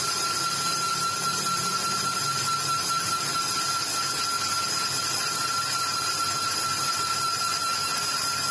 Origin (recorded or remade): recorded